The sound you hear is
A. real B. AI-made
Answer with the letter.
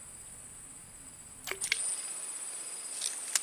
A